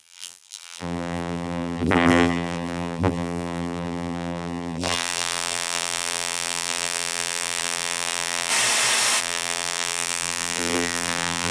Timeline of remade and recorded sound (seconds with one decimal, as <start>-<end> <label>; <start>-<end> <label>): 0.0-8.5 remade; 8.5-9.2 recorded; 9.2-11.5 remade